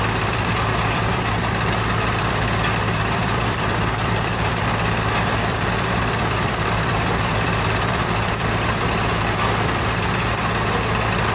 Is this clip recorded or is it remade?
remade